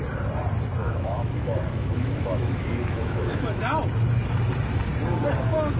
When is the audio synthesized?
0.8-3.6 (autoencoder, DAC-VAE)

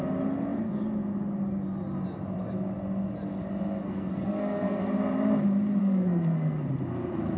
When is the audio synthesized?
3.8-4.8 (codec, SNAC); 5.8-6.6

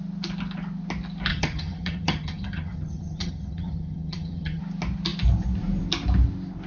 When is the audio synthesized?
1.3-4.6 (vocoder, HiFi-GAN)

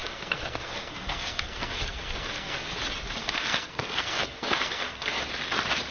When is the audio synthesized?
0.0-2.7 (codec, SNAC); 3.2-5.2